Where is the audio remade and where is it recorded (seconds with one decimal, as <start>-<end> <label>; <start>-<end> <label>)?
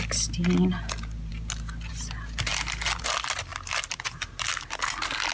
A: 0.0-5.3 recorded